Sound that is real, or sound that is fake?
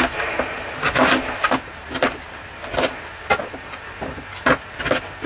real